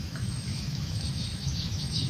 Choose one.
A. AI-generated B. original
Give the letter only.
A